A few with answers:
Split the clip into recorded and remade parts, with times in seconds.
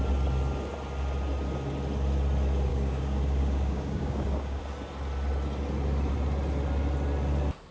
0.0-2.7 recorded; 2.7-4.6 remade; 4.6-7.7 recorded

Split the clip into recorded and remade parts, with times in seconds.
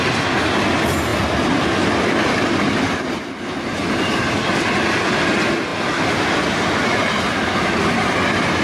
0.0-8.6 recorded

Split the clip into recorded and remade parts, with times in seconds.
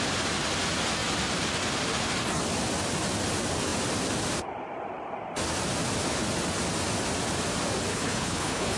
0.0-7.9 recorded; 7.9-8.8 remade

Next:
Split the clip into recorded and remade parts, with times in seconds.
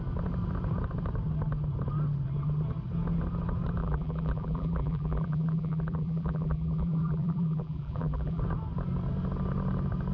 0.0-3.8 recorded; 3.8-8.4 remade; 8.4-10.1 recorded